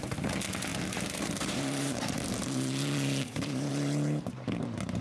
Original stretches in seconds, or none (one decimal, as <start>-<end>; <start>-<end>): 0.0-0.7; 3.7-5.0